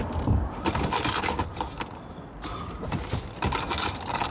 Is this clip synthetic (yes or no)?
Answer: yes